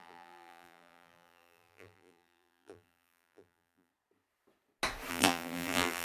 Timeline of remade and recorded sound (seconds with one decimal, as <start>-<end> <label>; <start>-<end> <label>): 0.0-3.9 remade; 3.9-5.1 recorded; 5.1-6.0 remade